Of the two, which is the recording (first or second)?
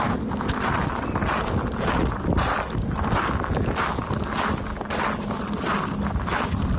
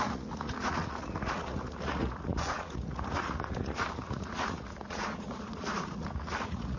first